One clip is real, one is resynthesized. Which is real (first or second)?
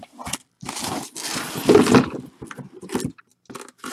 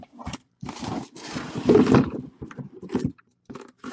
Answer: first